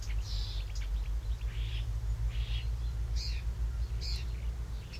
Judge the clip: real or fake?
real